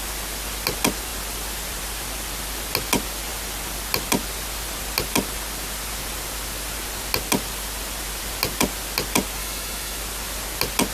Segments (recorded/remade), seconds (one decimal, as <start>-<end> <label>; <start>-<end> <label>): 0.0-9.4 recorded; 9.4-10.0 remade; 10.0-10.9 recorded